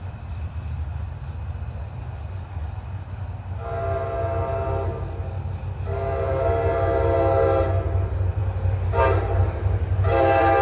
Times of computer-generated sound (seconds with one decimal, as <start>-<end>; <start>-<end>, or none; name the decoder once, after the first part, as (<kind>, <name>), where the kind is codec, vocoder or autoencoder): none